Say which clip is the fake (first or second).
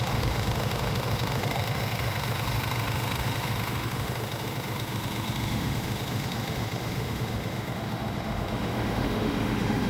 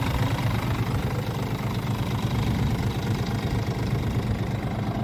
first